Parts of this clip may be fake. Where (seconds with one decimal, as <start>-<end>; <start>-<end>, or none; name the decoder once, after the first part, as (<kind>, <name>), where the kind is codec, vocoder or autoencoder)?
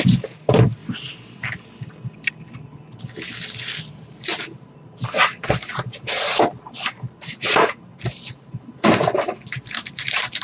0.0-0.8 (vocoder, BigVGAN v2); 3.9-10.4